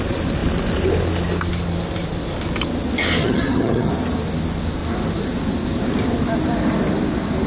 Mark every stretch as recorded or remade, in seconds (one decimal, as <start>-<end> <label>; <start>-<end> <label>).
0.0-3.2 recorded; 3.2-3.9 remade; 3.9-7.5 recorded